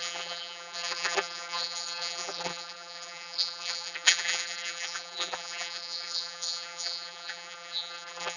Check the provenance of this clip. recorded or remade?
remade